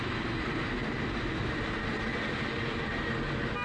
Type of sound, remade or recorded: remade